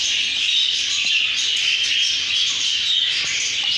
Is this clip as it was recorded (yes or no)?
yes